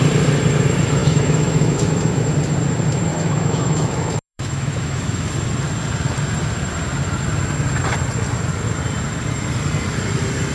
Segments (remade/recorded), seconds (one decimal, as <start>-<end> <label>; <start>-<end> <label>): 0.0-1.0 recorded; 1.0-2.3 remade; 2.3-3.1 recorded; 3.1-5.3 remade; 5.3-10.5 recorded